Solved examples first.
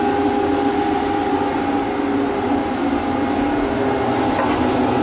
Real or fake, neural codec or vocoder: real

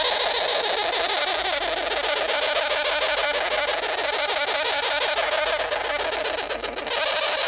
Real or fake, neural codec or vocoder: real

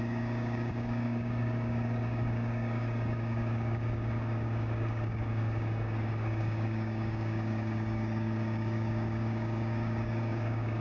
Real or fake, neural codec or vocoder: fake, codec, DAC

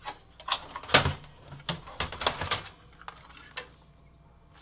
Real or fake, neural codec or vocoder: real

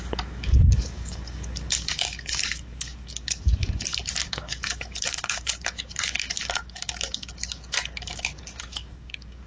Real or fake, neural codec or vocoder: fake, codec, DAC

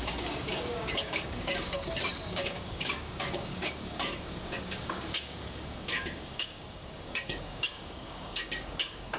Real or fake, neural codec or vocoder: fake, codec, DAC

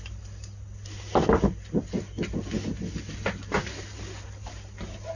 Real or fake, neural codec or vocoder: real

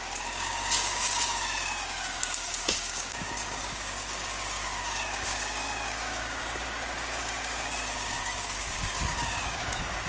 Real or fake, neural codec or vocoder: fake, codec, DAC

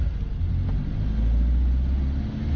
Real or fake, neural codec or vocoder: real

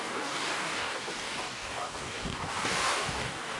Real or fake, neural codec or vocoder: fake, codec, DAC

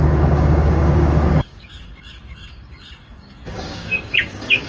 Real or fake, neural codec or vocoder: fake, codec, DAC